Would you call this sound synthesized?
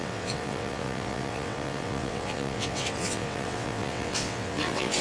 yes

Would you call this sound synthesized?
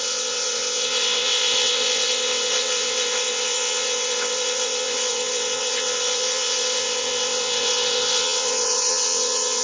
yes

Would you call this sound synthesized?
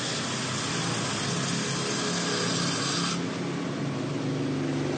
no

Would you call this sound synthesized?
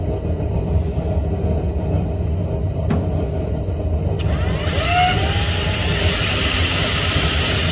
no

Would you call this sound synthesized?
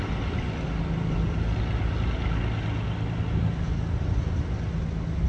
no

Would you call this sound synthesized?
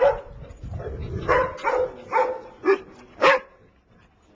no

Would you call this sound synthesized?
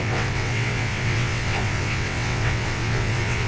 yes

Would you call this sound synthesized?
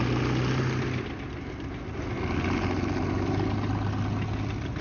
no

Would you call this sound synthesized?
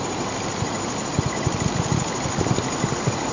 no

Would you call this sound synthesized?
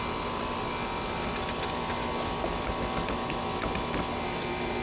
no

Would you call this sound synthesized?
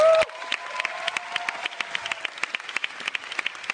no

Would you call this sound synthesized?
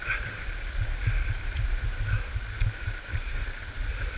no